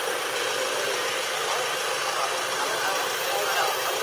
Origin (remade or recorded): recorded